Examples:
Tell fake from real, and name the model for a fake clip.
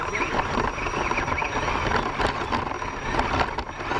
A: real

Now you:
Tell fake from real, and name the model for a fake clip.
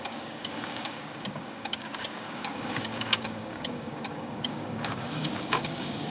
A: fake, codec, DAC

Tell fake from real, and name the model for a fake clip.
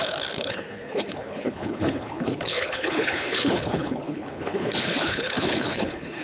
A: fake, codec, HILCodec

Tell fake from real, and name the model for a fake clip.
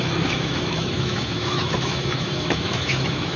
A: fake, autoencoder, DAC-VAE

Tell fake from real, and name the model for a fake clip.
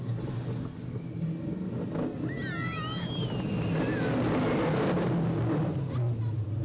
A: real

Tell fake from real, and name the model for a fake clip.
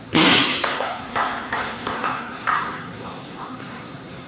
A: fake, codec, SNAC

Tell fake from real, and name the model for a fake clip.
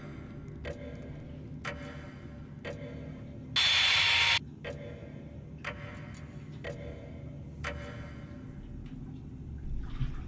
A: real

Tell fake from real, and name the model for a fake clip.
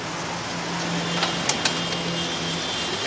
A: real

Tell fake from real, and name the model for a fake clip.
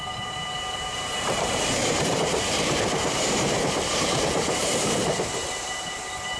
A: fake, vocoder, BigVGAN v2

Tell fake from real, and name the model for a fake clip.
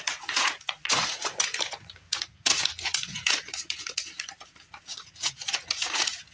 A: fake, vocoder, Vocos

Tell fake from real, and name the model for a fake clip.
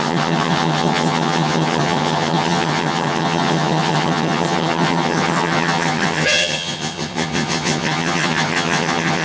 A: fake, vocoder, HiFi-GAN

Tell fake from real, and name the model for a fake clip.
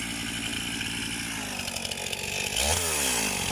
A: real